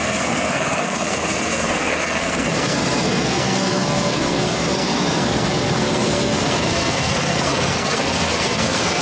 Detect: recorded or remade remade